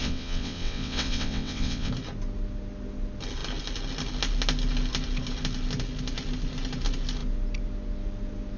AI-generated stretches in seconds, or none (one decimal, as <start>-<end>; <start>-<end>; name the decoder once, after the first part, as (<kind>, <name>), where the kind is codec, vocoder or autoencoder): 0.0-1.9 (vocoder, WaveNeXt)